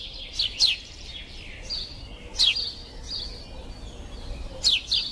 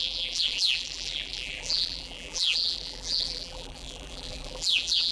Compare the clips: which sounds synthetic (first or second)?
second